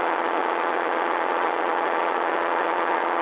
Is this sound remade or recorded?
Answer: remade